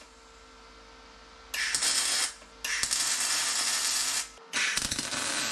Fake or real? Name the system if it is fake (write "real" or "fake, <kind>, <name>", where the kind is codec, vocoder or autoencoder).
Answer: real